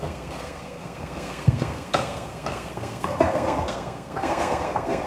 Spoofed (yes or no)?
yes